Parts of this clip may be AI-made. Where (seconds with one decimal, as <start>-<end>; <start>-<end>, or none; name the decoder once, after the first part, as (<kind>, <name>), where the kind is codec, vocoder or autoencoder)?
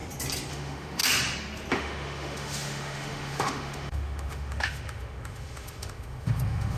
0.5-1.0 (autoencoder, DAC-VAE); 1.7-6.8